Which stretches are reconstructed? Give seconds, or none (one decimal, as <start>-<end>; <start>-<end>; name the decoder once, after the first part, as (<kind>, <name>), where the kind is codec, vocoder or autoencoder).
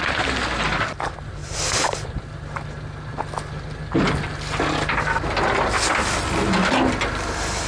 none